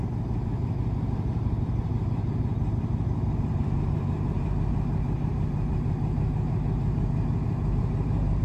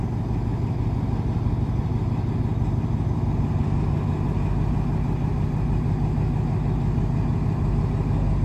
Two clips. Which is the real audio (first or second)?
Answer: second